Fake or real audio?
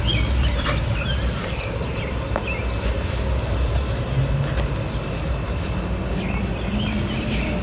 real